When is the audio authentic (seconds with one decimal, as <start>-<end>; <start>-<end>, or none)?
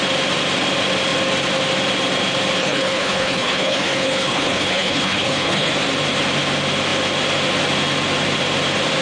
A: 0.0-2.6; 5.7-9.0